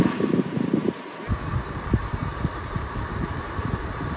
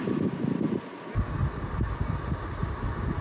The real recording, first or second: second